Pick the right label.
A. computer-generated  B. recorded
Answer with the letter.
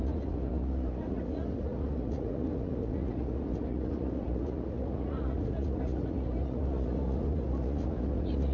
A